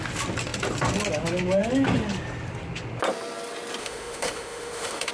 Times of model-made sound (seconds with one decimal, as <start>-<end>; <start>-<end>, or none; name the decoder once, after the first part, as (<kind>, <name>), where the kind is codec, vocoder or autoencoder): 3.8-5.1 (autoencoder, DAC-VAE)